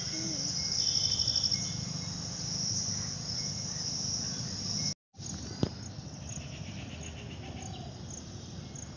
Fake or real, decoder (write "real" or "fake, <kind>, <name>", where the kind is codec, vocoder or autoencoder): real